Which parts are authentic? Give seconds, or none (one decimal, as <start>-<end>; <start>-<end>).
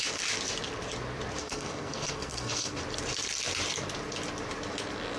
0.0-1.4; 2.8-5.2